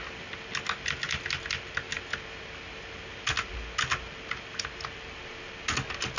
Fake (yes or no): no